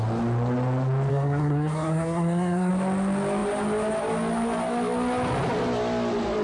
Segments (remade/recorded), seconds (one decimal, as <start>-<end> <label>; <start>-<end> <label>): 0.0-1.1 recorded; 1.1-2.7 remade; 2.7-6.4 recorded